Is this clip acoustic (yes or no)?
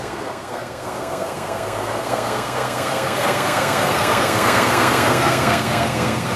no